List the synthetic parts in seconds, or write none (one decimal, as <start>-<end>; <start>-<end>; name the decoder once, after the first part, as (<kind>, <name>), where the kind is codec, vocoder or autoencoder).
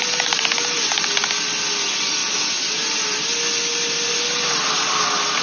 none